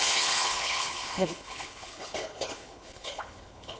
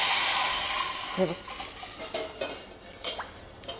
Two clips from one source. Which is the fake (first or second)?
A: first